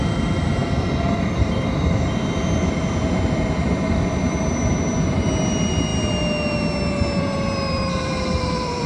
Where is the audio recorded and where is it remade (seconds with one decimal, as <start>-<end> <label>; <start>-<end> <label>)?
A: 0.0-5.9 remade; 5.9-7.2 recorded; 7.2-8.9 remade

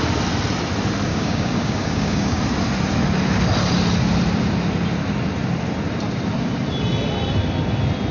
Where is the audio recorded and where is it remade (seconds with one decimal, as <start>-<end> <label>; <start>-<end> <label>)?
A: 0.0-1.1 recorded; 1.1-2.4 remade; 2.4-8.1 recorded

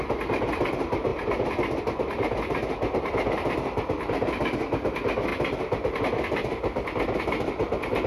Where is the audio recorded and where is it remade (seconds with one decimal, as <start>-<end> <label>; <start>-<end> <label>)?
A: 0.0-8.1 recorded

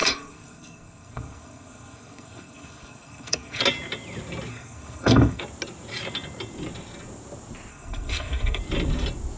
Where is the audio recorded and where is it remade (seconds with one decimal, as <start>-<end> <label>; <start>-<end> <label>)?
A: 0.0-3.6 remade; 3.6-4.5 recorded; 4.5-5.4 remade; 5.4-7.7 recorded; 7.7-8.6 remade; 8.6-9.4 recorded

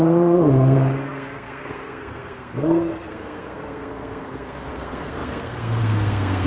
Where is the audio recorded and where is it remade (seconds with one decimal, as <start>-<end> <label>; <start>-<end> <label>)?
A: 0.0-6.5 remade

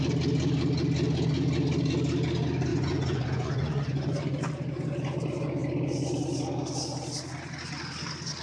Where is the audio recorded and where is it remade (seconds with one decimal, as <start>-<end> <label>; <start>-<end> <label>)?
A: 0.0-2.7 recorded; 2.7-4.4 remade; 4.4-8.4 recorded

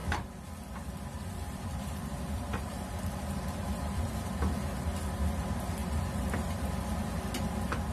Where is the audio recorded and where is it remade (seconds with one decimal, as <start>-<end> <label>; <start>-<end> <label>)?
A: 0.0-4.3 remade; 4.3-5.8 recorded; 5.8-6.7 remade; 6.7-7.9 recorded